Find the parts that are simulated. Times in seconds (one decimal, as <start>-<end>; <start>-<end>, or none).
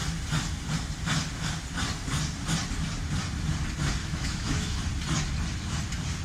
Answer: 4.0-4.8